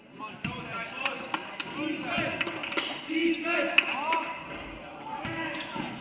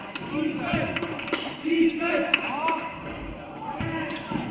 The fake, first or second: second